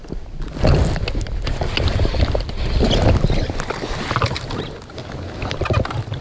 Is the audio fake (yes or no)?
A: no